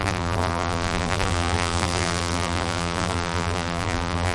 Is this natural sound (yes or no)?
no